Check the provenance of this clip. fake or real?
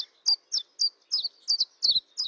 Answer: real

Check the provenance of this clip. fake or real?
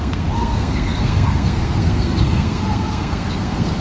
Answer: fake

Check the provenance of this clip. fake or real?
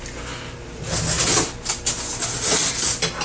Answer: real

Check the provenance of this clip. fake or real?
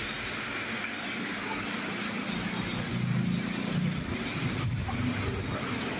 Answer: real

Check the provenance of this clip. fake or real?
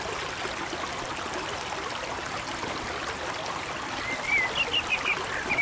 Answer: real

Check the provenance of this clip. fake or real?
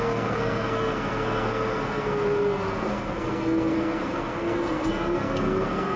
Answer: fake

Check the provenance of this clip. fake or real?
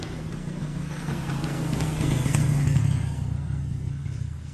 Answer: fake